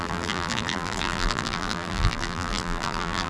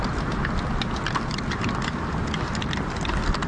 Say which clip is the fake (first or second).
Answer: first